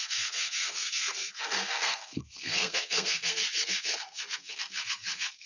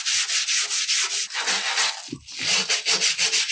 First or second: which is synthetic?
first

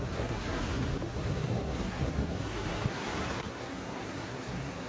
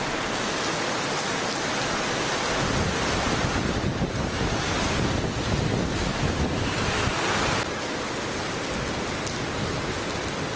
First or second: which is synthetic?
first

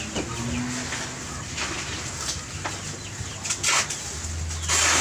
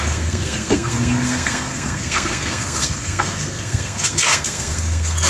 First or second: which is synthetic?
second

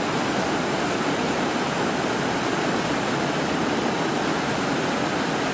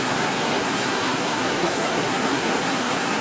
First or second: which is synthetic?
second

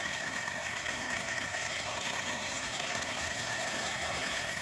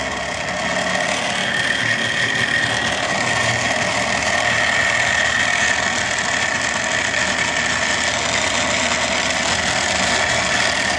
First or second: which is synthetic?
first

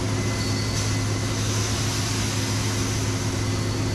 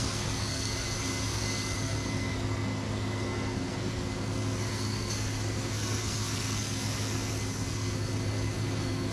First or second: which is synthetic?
second